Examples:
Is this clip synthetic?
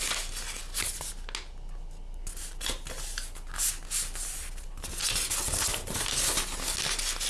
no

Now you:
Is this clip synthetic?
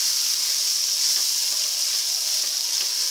no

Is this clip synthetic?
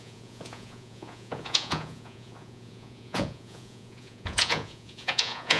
yes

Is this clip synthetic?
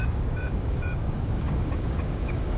yes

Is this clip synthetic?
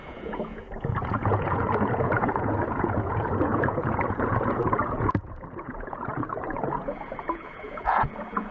yes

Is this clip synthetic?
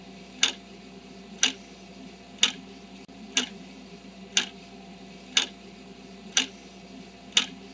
no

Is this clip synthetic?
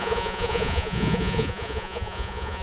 yes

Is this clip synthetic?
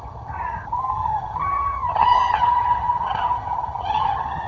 yes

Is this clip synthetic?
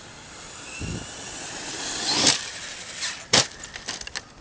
no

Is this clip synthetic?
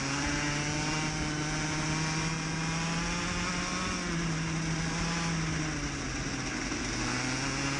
no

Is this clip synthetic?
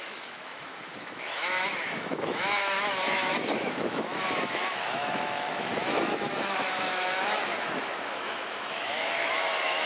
yes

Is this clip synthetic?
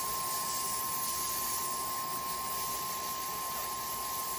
no